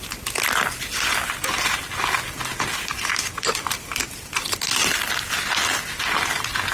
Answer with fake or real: real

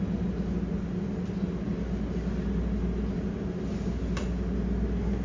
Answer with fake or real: real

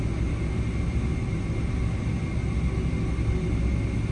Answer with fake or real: real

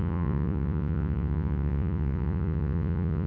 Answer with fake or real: fake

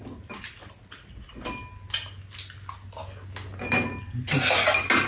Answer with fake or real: real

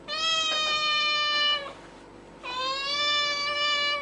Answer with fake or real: real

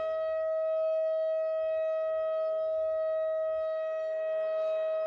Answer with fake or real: fake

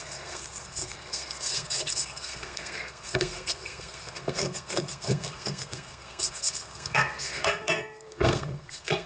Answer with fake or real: fake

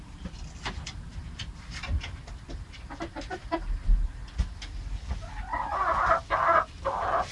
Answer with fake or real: real